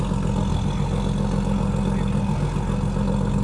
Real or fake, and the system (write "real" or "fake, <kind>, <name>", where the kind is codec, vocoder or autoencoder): real